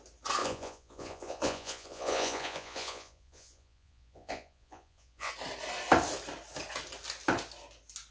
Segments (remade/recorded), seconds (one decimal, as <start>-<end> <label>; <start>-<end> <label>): 0.0-0.4 recorded; 0.4-5.3 remade; 5.3-8.1 recorded